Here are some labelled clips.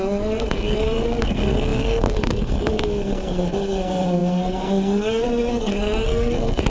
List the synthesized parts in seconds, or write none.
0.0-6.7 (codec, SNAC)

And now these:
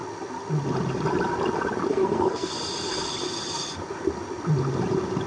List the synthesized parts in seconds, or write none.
1.9-2.5 (codec, SNAC)

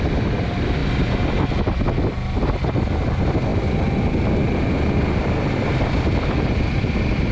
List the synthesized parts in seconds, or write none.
none

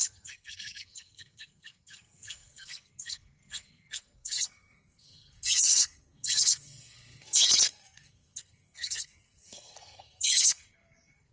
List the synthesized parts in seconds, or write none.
0.0-11.3 (codec, SNAC)

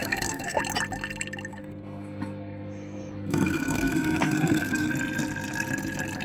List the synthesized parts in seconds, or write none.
0.0-0.6 (codec, SNAC); 1.5-4.9